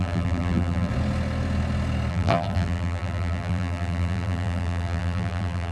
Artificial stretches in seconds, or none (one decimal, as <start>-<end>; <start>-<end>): 0.0-0.9; 2.1-5.7